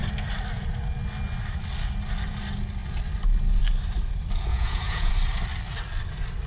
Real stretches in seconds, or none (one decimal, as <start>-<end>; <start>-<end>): 0.0-4.5; 5.1-6.5